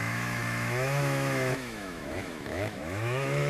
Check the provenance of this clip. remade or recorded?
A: remade